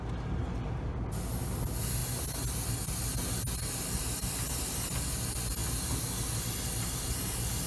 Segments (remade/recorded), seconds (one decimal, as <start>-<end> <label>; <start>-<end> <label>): 0.0-7.7 recorded